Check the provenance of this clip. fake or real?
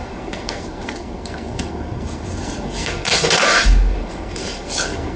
fake